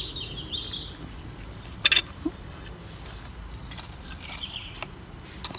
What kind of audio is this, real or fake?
real